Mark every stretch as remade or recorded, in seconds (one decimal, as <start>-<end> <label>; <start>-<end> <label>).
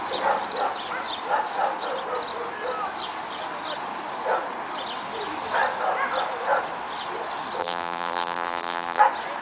0.0-7.6 recorded; 7.6-9.0 remade; 9.0-9.4 recorded